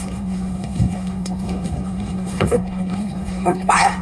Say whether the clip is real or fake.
fake